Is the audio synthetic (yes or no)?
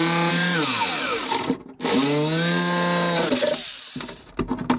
no